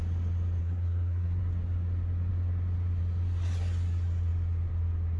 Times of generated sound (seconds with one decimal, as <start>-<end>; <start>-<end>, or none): 0.6-1.4